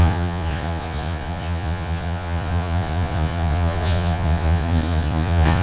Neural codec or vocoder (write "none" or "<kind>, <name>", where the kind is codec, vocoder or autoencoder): vocoder, Vocos